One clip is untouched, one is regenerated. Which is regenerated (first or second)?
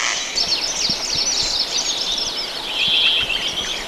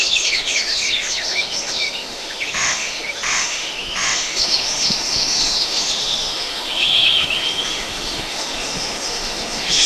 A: second